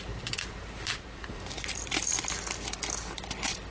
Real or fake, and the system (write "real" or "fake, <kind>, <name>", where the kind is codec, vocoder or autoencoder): real